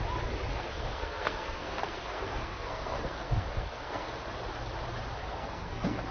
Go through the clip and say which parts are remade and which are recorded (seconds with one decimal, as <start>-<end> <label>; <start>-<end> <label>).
0.0-0.5 recorded; 0.5-4.2 remade; 4.2-5.2 recorded; 5.2-6.1 remade